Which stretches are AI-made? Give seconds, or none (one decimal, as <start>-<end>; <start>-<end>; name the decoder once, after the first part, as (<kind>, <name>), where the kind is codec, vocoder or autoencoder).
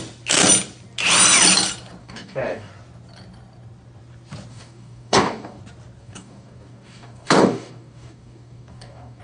2.0-2.7 (codec, DAC); 4.5-5.6; 6.0-9.2